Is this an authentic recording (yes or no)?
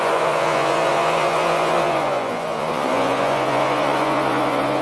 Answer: no